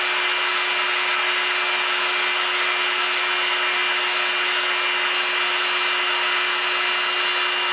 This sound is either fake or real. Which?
real